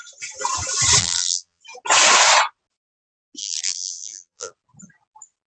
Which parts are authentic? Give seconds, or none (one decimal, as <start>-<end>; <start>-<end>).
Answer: 0.0-1.0; 1.6-3.4; 4.5-5.5